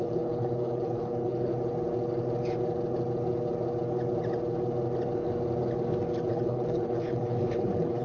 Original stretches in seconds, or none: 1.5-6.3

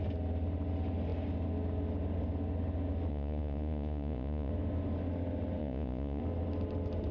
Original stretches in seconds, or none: 0.0-3.1; 4.5-5.6; 6.2-7.1

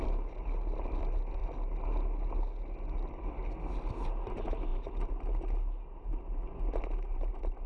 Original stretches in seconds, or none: 0.0-7.7

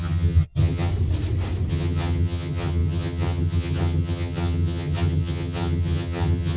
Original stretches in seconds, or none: 0.9-1.7

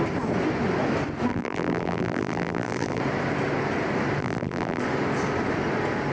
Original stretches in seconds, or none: 0.0-1.3; 3.0-4.2; 4.8-6.1

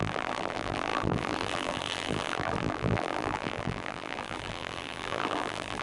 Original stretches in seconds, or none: none

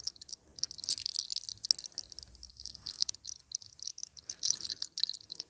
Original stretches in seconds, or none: 0.0-2.5; 3.1-5.5

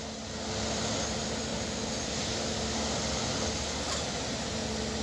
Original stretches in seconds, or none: 0.0-5.0